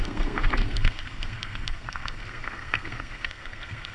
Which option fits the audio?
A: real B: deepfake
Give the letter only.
B